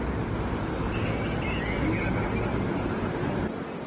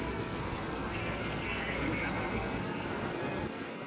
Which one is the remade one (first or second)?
second